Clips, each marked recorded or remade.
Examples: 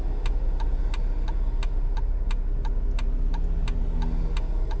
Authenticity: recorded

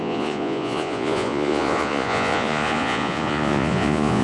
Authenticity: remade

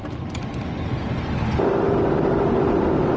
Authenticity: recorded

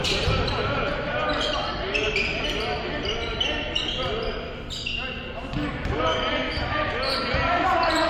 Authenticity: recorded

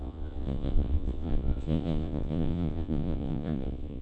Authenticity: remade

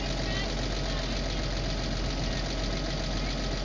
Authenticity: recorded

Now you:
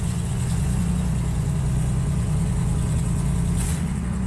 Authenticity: remade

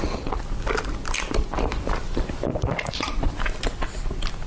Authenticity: recorded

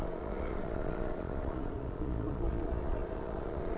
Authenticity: remade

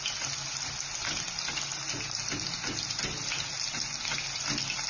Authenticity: recorded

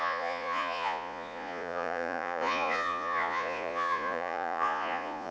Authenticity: remade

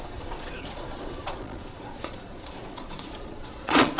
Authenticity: remade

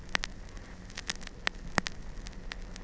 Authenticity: recorded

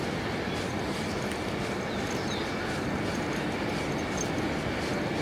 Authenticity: recorded